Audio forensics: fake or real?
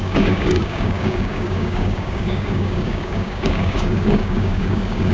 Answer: fake